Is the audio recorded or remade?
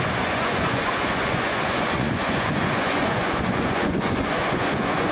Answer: remade